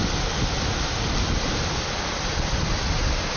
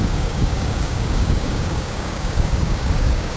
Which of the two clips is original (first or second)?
first